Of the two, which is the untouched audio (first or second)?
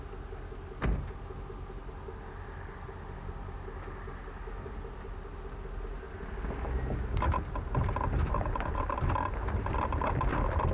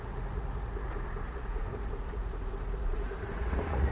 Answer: first